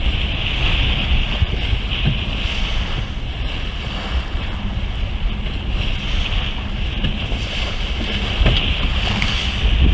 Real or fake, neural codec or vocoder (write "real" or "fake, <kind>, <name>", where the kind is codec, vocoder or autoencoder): real